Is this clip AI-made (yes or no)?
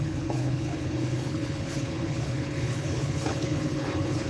yes